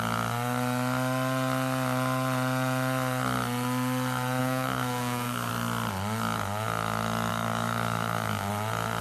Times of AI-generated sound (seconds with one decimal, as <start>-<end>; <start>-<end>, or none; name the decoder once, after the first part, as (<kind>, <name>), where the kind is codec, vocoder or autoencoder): 4.4-5.5 (codec, DAC); 7.3-8.5